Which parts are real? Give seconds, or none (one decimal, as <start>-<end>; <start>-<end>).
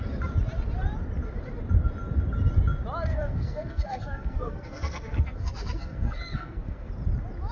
0.0-3.1; 6.9-7.5